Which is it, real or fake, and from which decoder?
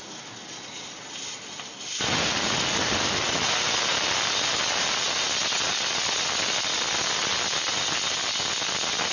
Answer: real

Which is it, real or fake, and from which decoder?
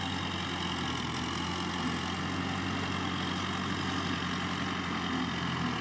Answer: real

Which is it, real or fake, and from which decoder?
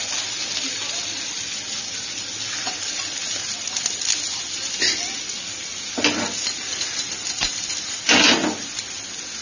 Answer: real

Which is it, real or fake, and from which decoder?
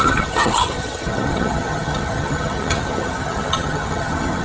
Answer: fake, vocoder, HiFi-GAN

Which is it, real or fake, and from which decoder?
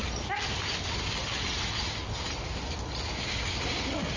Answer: real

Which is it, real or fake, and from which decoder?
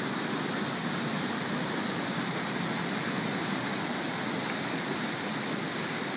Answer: real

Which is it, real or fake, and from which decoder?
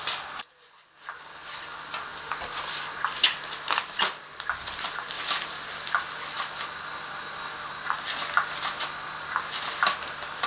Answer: real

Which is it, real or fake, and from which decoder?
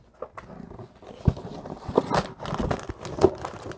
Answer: real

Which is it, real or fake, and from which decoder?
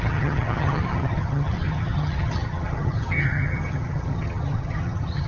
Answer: fake, vocoder, HiFi-GAN